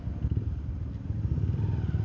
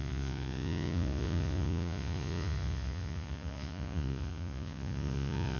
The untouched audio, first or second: first